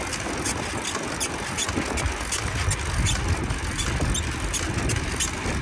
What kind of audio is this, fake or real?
real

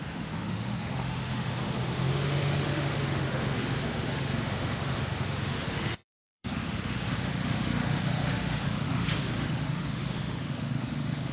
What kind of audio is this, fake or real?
fake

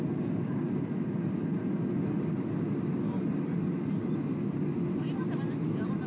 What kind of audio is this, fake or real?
real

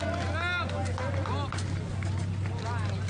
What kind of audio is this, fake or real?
real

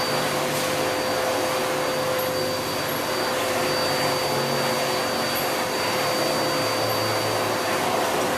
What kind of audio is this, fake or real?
real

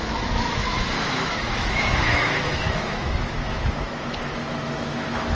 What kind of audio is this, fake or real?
fake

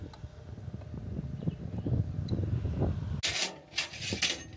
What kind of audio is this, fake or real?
real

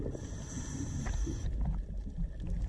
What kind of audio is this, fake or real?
real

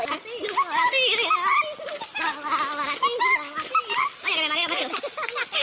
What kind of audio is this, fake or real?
real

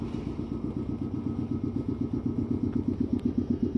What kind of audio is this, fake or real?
real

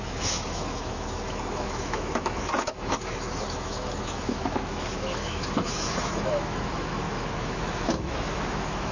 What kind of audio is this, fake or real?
fake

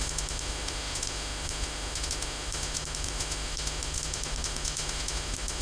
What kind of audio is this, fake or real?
fake